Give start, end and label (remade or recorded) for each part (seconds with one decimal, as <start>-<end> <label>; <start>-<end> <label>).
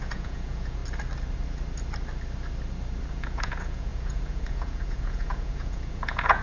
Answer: 0.0-0.8 remade; 0.8-3.1 recorded; 3.1-6.4 remade